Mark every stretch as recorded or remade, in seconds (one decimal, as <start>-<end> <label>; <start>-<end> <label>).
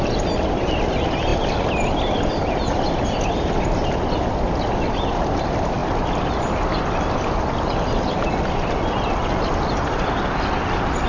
0.0-11.1 recorded